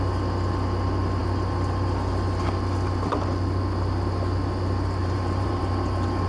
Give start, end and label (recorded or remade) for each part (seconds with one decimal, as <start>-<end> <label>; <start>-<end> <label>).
0.0-5.0 recorded; 5.0-5.6 remade; 5.6-6.3 recorded

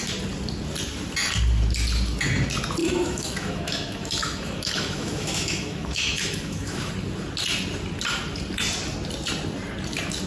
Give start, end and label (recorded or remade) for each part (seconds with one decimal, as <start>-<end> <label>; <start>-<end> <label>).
0.0-2.8 recorded; 2.8-6.9 remade; 6.9-10.3 recorded

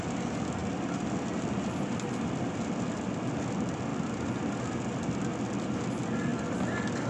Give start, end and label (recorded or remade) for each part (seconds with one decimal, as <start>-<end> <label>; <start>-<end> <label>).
0.0-7.1 recorded

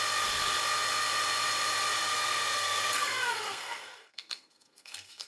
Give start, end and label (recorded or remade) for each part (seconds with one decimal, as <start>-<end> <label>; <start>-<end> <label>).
0.0-2.0 recorded; 2.0-5.3 remade

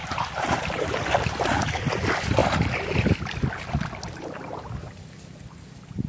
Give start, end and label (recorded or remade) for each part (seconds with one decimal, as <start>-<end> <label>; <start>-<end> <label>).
0.0-0.9 remade; 0.9-6.1 recorded

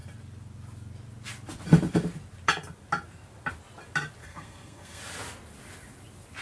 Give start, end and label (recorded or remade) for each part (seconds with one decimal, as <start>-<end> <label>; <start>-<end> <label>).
0.0-4.2 recorded; 4.2-5.0 remade; 5.0-6.4 recorded

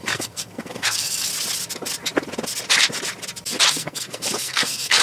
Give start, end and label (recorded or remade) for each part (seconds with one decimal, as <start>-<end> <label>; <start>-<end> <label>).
0.0-1.3 remade; 1.3-3.7 recorded; 3.7-5.0 remade

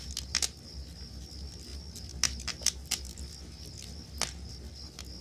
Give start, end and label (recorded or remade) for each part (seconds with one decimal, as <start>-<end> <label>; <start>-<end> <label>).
0.0-5.2 recorded